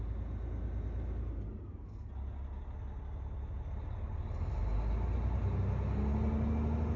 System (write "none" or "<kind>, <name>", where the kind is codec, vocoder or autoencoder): none